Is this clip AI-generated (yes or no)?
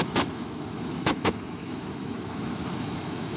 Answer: yes